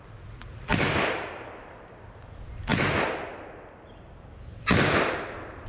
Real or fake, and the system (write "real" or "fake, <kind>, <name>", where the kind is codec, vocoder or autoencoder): fake, vocoder, BigVGAN v2